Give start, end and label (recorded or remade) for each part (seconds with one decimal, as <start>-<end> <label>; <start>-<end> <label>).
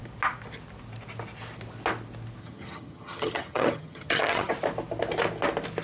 0.0-2.4 recorded; 2.4-4.5 remade; 4.5-5.8 recorded